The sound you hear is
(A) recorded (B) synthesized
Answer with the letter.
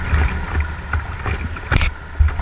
A